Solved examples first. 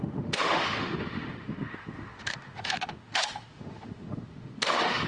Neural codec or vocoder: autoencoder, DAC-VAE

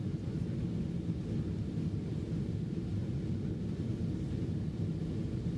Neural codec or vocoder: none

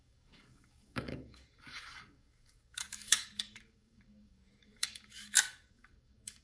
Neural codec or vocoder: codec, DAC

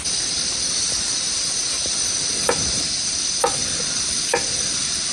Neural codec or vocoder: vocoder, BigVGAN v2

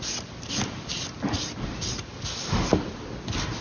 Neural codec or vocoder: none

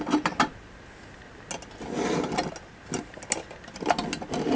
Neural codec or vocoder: none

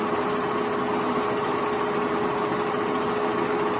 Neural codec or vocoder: none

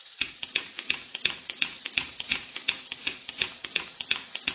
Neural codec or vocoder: vocoder, Vocos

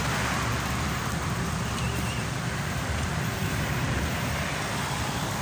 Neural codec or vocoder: vocoder, BigVGAN v2